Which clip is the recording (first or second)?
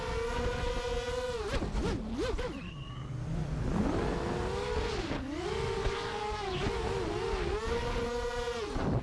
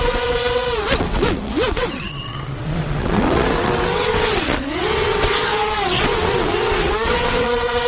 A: first